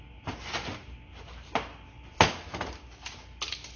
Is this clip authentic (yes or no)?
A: yes